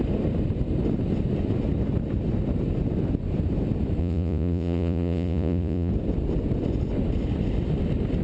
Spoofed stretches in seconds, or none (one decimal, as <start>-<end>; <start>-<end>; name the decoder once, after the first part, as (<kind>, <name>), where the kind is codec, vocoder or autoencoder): 4.0-5.9 (vocoder, Vocos)